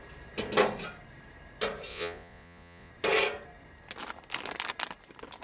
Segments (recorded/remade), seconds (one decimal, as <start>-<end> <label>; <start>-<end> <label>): 0.0-1.9 recorded; 1.9-2.9 remade; 2.9-5.4 recorded